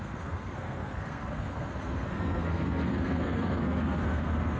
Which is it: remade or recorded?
remade